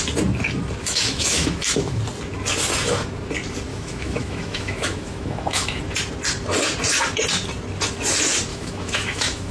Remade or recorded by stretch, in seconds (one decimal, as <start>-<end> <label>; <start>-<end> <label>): 0.0-0.8 recorded; 0.8-2.0 remade; 2.0-3.7 recorded; 3.7-5.8 remade; 5.8-8.5 recorded; 8.5-9.5 remade